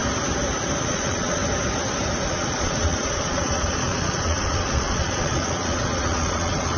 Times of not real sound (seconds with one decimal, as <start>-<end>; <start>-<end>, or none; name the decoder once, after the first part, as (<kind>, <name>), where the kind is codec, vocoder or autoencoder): 0.8-1.4 (vocoder, Vocos); 2.3-6.8